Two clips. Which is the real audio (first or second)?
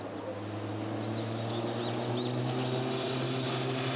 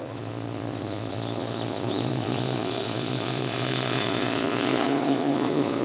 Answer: first